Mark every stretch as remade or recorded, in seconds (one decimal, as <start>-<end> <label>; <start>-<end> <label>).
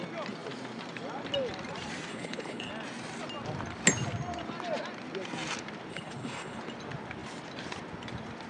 0.0-2.1 recorded; 2.1-2.7 remade; 2.7-5.9 recorded; 5.9-6.6 remade; 6.6-8.5 recorded